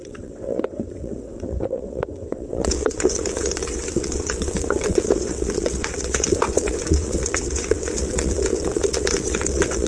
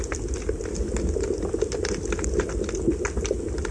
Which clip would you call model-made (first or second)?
first